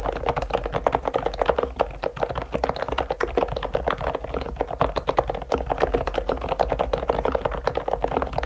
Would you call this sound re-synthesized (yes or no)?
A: no